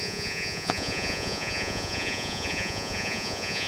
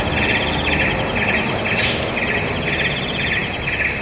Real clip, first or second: second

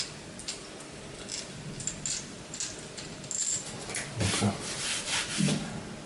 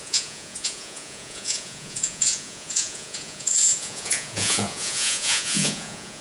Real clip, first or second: first